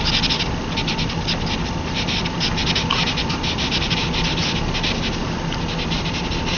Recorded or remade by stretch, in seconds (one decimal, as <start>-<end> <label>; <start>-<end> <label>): 0.0-6.6 recorded